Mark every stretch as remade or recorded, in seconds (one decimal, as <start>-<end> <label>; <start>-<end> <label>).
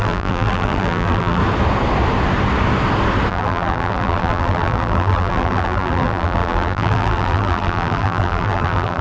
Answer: 0.0-1.4 remade; 1.4-3.3 recorded; 3.3-9.0 remade